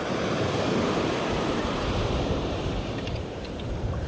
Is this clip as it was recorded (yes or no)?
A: no